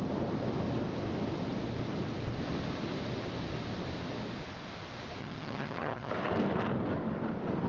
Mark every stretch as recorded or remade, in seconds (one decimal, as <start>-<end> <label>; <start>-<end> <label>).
0.0-5.2 recorded; 5.2-6.1 remade; 6.1-7.7 recorded